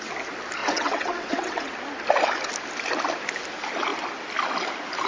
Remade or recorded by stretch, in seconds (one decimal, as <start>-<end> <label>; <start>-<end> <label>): 0.0-0.6 recorded; 0.6-1.7 remade; 1.7-5.1 recorded

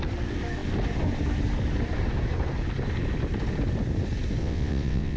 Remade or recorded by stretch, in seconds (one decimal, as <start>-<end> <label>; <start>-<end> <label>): 0.0-4.4 recorded; 4.4-5.2 remade